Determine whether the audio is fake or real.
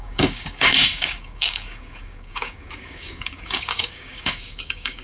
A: fake